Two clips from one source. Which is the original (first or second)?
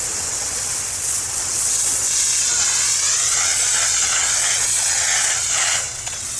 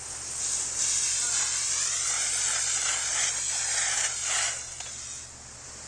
second